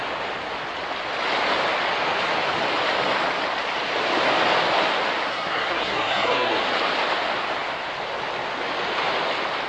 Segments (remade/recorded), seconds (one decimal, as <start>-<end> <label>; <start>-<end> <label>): 0.0-5.3 recorded; 5.3-6.6 remade; 6.6-9.7 recorded